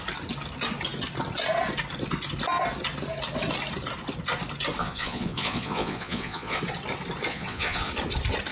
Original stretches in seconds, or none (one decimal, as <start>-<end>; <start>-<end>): 0.0-4.8; 6.6-7.3; 7.9-8.5